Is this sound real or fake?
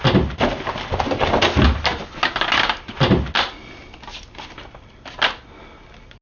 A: real